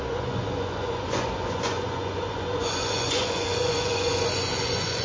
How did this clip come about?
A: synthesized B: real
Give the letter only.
A